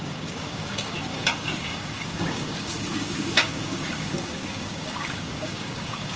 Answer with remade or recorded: remade